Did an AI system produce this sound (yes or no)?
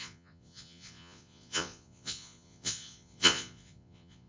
yes